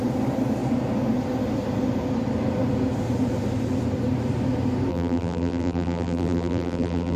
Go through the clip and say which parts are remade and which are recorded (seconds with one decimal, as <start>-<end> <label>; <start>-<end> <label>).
0.0-4.9 recorded; 4.9-7.2 remade